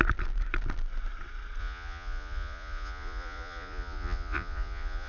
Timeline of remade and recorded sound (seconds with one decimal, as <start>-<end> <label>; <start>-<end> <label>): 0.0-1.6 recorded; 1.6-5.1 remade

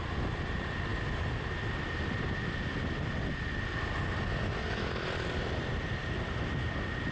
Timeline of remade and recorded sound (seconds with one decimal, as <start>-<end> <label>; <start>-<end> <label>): 0.0-7.1 recorded

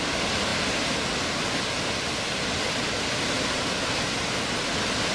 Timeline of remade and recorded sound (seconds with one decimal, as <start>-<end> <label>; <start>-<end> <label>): 0.0-5.1 recorded